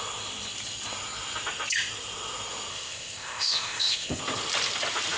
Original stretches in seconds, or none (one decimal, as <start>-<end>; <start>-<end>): 0.0-2.7; 4.2-5.2